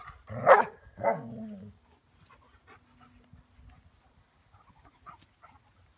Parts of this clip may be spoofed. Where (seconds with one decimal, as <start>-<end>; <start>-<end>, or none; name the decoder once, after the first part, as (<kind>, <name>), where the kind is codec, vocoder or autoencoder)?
0.8-1.3 (codec, SNAC)